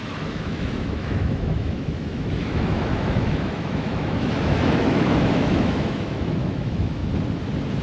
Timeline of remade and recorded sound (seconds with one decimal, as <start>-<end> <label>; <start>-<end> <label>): 0.0-7.0 remade; 7.0-7.8 recorded